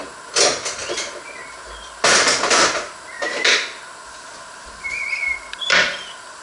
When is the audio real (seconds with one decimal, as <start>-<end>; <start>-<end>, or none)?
0.8-4.6